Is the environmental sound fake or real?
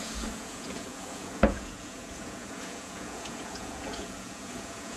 fake